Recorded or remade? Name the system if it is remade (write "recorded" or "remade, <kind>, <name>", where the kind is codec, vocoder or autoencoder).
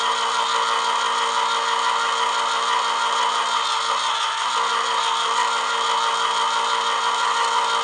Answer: recorded